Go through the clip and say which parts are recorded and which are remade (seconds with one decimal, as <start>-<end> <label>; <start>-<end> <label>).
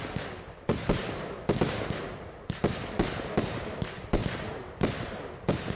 0.0-5.8 recorded